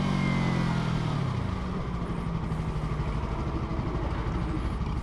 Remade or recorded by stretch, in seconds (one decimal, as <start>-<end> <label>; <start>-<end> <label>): 0.0-5.0 recorded